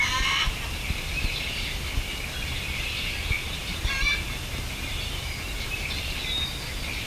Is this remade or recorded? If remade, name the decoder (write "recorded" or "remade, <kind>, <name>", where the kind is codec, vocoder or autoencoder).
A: recorded